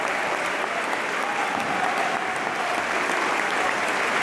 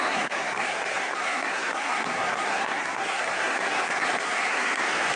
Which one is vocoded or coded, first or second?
second